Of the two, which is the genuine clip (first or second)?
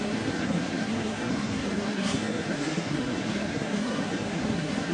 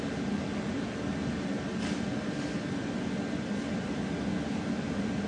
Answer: second